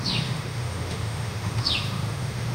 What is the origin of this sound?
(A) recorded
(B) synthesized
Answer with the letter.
B